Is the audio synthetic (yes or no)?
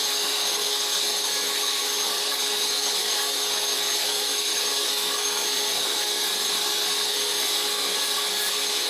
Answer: yes